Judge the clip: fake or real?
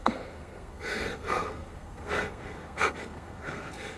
fake